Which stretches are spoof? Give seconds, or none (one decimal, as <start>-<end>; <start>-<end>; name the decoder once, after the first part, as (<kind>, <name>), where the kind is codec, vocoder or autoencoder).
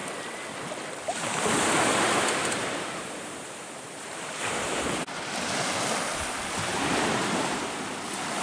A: 2.4-4.9 (vocoder, BigVGAN v2); 6.7-7.6